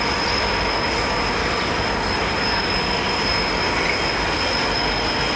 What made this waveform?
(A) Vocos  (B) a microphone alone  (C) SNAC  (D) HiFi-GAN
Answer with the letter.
B